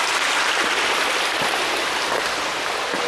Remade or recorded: recorded